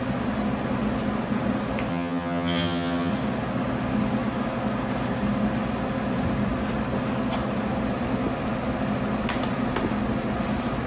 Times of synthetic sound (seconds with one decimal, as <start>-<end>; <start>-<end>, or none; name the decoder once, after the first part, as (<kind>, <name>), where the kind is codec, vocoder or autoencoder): 1.9-3.1 (vocoder, HiFi-GAN)